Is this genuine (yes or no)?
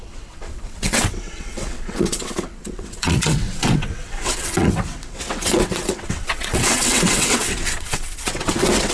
no